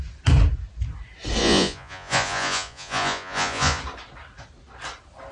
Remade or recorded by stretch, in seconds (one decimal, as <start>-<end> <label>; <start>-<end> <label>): 0.0-1.4 recorded; 1.4-3.8 remade; 3.8-5.3 recorded